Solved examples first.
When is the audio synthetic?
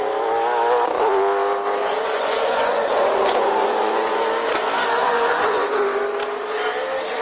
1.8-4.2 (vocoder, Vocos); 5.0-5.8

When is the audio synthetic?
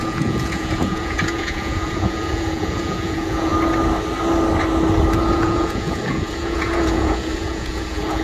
0.0-3.5 (vocoder, Vocos); 5.3-8.2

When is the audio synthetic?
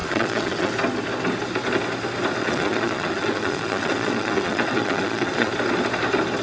0.0-0.7 (vocoder, Vocos); 2.4-5.5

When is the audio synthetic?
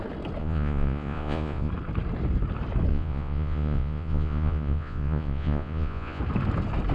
0.4-1.7 (vocoder, Vocos); 2.9-6.2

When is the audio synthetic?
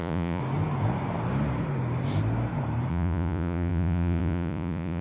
0.0-0.4 (vocoder, Vocos); 2.9-5.0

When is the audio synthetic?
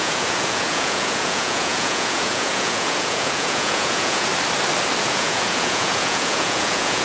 0.0-4.3 (vocoder, Vocos); 5.0-7.0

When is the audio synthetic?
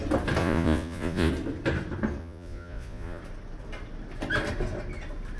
0.4-1.3 (vocoder, Vocos); 2.2-3.2